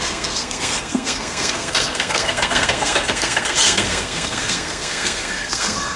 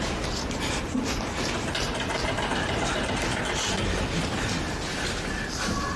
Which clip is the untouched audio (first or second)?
second